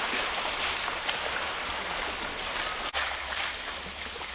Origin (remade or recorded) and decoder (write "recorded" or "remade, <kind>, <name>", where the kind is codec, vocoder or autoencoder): recorded